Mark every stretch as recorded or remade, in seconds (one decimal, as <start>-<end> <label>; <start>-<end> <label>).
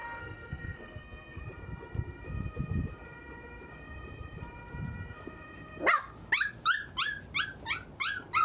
0.0-1.4 remade; 1.4-8.4 recorded